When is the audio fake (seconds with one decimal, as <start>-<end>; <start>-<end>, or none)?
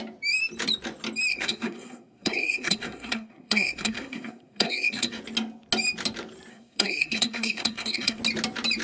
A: 1.3-5.2; 6.5-8.2